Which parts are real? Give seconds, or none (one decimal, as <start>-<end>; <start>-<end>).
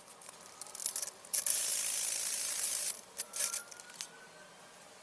3.6-4.6